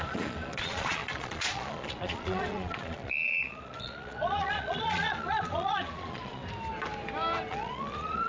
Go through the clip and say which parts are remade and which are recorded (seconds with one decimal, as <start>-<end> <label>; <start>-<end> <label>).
0.0-6.4 remade; 6.4-7.5 recorded; 7.5-8.3 remade